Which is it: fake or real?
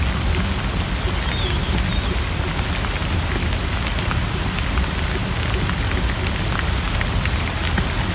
real